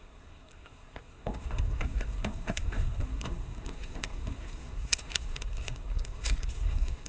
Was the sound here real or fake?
fake